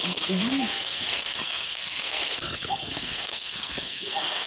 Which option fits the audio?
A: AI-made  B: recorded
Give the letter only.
A